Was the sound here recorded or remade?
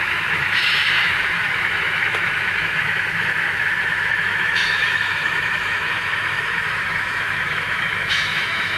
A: remade